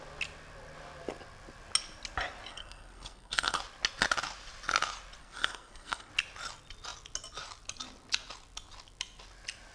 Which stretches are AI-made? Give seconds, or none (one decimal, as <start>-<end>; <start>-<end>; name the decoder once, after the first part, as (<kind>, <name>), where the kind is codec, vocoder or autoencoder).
2.5-3.6 (codec, SNAC); 5.2-6.1